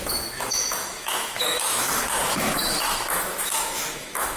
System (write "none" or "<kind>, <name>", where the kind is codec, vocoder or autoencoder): autoencoder, DAC-VAE